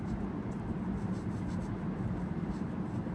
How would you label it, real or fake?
real